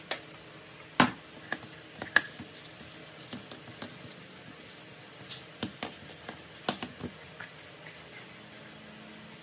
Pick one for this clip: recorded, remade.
recorded